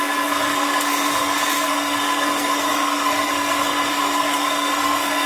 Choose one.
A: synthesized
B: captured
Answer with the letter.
A